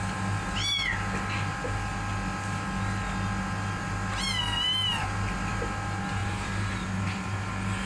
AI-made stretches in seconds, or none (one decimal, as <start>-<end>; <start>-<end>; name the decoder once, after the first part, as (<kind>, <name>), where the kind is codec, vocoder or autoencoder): 6.2-7.5 (vocoder, BigVGAN v2)